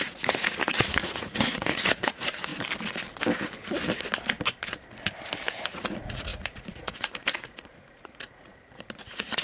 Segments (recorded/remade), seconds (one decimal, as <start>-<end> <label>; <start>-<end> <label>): 0.0-2.5 remade; 2.5-5.6 recorded; 5.6-9.4 remade